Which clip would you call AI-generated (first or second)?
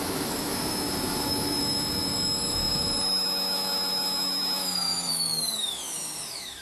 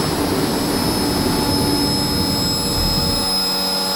first